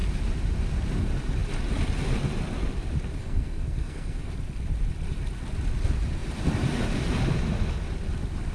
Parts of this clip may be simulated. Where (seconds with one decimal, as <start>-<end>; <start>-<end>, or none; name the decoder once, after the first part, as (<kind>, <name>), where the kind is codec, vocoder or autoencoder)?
3.2-4.3 (codec, SNAC)